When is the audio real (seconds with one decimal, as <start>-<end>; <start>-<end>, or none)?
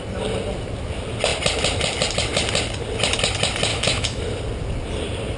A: 0.0-3.7; 4.2-5.4